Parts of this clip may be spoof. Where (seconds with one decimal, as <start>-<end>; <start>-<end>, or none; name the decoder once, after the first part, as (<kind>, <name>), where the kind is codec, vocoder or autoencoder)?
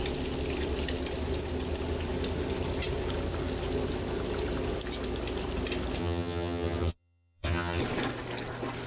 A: 6.0-7.8 (vocoder, HiFi-GAN)